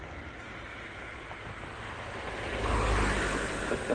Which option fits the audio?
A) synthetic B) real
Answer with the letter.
B